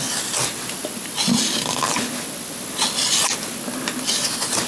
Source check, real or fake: real